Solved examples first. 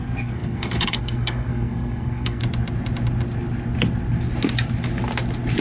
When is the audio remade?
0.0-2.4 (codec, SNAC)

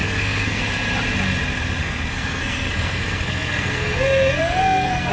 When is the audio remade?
0.0-0.6 (codec, SNAC); 1.8-5.1

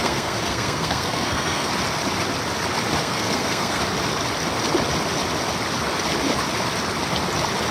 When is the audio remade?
0.0-1.7 (codec, SNAC); 3.0-3.8

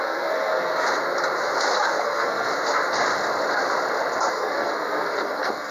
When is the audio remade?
0.0-0.7 (codec, SNAC); 2.0-2.5; 4.3-5.7

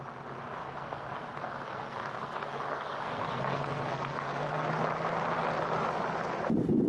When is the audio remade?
0.6-4.7 (codec, SNAC)

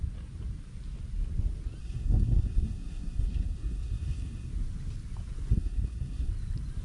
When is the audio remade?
1.8-4.5 (codec, SNAC); 5.5-6.3

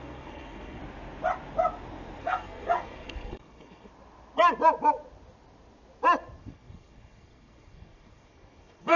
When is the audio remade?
0.0-0.8 (codec, SNAC); 2.2-3.9; 6.4-9.0